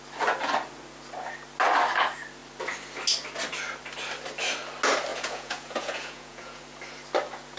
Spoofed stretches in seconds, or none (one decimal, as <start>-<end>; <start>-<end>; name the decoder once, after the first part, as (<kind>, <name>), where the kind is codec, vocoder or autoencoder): 5.1-6.6 (vocoder, Vocos)